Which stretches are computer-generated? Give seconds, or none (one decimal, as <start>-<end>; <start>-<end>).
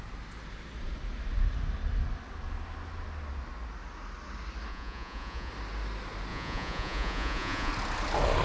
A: 4.7-5.5; 6.3-7.7